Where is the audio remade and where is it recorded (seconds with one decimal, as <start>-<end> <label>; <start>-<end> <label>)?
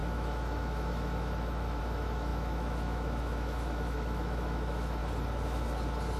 0.0-5.0 remade; 5.0-6.2 recorded